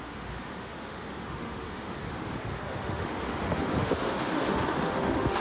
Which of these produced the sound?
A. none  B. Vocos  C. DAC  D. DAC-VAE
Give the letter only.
D